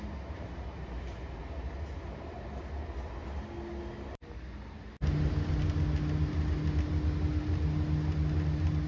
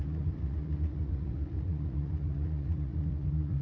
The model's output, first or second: second